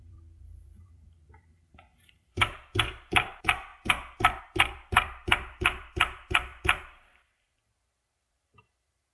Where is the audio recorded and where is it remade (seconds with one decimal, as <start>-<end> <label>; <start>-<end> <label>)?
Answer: 0.0-3.7 remade; 3.7-4.4 recorded; 4.4-9.1 remade